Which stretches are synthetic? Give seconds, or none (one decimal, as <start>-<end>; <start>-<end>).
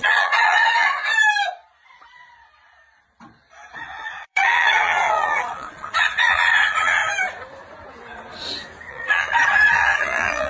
0.0-1.0; 3.7-7.0; 8.9-10.5